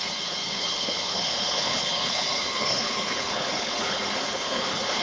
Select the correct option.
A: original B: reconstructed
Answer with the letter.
B